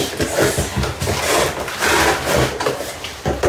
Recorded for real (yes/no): yes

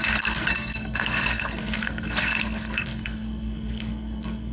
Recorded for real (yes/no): no